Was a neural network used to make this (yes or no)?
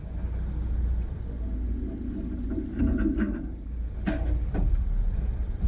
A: no